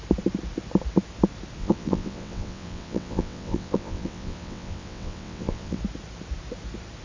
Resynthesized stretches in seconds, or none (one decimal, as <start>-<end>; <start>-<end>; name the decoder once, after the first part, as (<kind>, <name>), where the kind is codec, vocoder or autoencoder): 1.6-5.8 (vocoder, WaveNeXt)